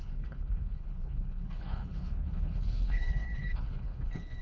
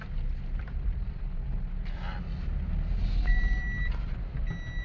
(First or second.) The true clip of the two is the second